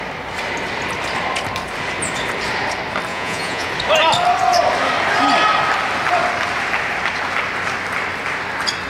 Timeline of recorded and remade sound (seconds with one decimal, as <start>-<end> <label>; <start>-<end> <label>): 0.0-3.1 recorded; 3.1-3.7 remade; 3.7-8.9 recorded